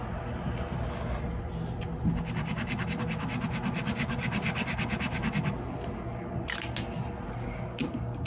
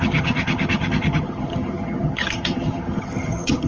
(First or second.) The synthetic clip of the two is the second